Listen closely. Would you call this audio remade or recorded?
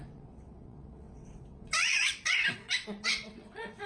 remade